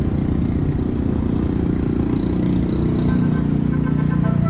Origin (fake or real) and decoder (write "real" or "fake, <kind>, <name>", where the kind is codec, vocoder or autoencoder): real